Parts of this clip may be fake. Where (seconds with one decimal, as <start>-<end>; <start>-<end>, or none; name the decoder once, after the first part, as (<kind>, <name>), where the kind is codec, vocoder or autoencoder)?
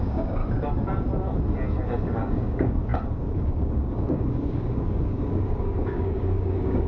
0.0-0.4 (codec, DAC); 2.3-6.9